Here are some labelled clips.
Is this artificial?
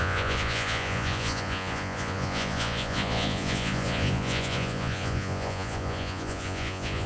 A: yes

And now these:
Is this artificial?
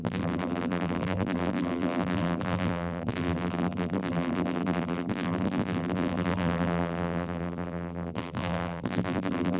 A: yes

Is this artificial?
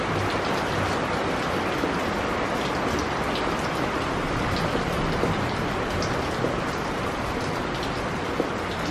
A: no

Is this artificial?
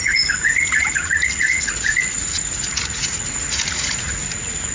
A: yes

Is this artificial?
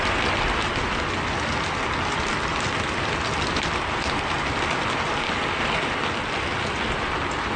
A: no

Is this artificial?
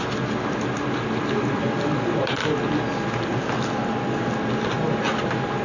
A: no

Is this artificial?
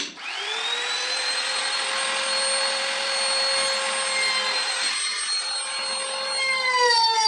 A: no